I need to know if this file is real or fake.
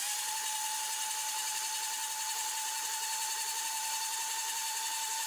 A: real